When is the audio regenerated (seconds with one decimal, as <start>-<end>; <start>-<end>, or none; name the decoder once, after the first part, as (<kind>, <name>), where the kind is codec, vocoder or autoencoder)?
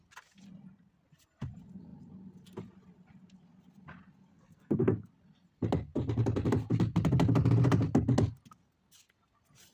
4.3-5.1 (codec, SNAC)